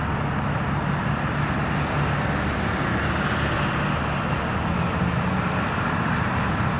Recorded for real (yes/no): yes